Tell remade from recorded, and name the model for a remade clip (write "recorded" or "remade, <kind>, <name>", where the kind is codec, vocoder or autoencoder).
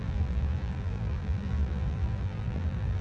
remade, vocoder, BigVGAN v2